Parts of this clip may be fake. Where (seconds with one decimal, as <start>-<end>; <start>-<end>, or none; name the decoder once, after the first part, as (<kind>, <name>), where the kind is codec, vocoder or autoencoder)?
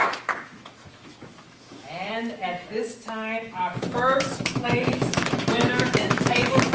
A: 0.0-6.7 (autoencoder, DAC-VAE)